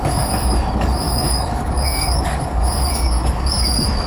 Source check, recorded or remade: remade